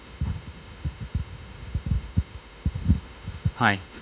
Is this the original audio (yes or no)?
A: no